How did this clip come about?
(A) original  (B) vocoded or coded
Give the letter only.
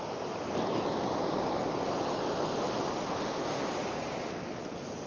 A